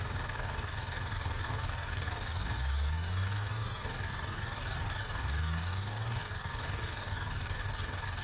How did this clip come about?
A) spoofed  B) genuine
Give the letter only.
A